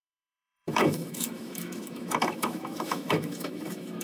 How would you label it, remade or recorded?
remade